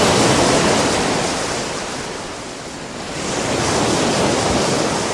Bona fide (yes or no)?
yes